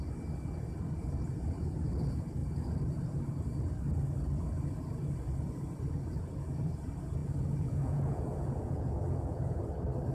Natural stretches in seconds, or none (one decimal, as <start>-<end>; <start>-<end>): 0.0-7.2; 9.6-10.1